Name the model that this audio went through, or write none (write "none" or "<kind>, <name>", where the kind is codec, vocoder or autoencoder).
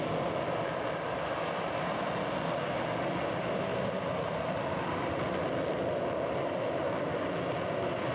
none